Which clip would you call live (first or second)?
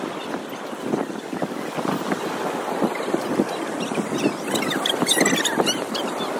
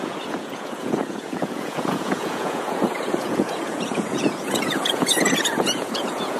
first